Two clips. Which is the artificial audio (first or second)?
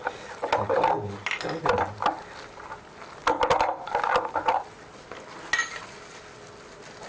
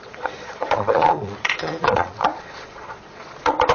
second